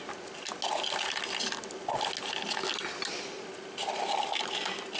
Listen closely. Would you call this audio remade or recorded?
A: recorded